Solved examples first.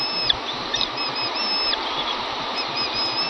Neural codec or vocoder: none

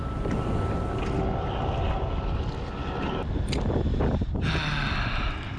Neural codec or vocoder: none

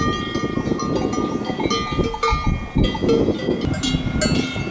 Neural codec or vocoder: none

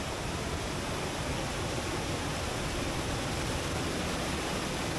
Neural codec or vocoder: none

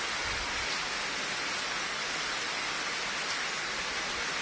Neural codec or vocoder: none